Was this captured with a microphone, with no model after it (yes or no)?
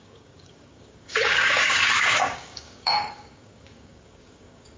no